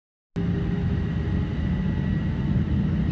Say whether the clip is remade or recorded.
recorded